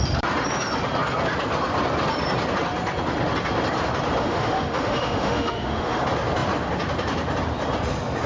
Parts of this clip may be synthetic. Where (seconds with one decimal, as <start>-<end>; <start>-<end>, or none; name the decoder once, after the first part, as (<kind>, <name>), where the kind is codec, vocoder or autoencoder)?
4.2-6.0 (autoencoder, DAC-VAE)